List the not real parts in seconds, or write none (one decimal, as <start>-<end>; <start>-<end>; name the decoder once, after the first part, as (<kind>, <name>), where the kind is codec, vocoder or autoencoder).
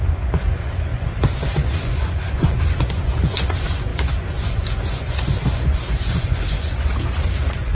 0.0-7.7 (vocoder, Vocos)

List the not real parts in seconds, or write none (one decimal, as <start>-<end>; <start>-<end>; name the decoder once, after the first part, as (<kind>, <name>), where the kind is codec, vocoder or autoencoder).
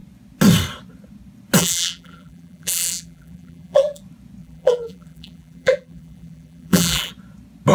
1.6-4.0 (vocoder, BigVGAN v2); 4.4-7.1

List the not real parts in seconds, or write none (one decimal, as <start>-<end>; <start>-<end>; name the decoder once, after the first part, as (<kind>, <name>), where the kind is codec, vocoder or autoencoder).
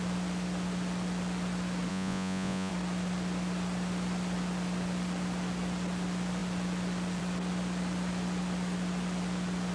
1.9-2.7 (vocoder, Vocos)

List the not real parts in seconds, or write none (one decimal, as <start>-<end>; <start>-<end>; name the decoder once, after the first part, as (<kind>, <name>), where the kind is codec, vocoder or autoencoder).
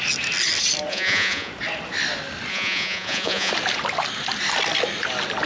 0.9-1.5 (vocoder, Vocos); 2.5-3.5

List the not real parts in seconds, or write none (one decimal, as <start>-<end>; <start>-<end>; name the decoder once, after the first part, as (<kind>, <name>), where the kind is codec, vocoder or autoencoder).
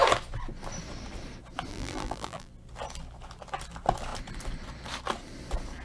1.7-2.5 (vocoder, BigVGAN v2)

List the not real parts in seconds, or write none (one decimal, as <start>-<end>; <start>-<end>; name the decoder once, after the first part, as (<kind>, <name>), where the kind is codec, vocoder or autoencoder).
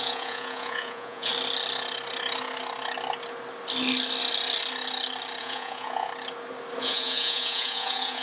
0.0-1.3 (vocoder, Vocos); 5.4-6.1; 6.8-8.2